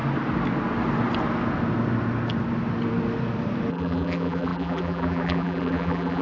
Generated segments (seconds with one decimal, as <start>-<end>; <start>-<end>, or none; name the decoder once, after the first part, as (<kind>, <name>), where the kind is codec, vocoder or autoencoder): 3.7-6.2 (vocoder, BigVGAN v2)